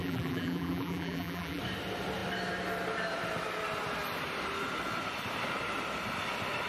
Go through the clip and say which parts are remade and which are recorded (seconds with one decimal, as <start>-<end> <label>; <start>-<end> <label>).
0.0-1.6 remade; 1.6-6.7 recorded